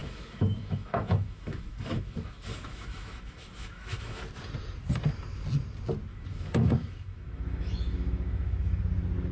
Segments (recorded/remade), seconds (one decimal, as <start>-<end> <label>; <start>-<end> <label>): 0.0-4.2 remade; 4.2-6.1 recorded; 6.1-8.8 remade; 8.8-9.3 recorded